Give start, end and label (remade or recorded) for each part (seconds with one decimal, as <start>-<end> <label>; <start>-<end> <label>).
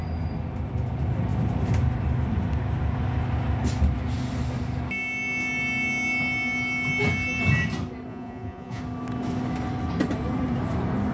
0.0-8.1 recorded; 8.1-8.8 remade; 8.8-11.1 recorded